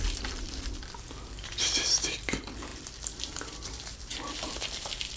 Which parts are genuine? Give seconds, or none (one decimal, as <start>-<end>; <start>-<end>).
none